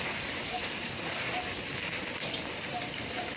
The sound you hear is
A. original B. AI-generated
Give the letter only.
B